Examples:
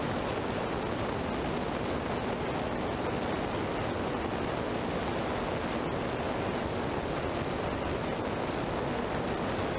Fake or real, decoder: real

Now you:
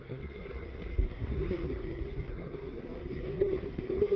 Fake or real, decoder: fake, codec, SNAC